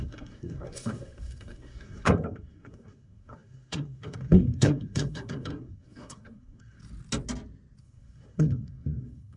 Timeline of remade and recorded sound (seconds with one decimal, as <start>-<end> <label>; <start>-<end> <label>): 0.0-6.8 remade; 6.8-7.8 recorded; 7.8-9.4 remade